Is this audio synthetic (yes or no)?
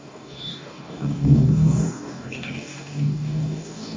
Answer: yes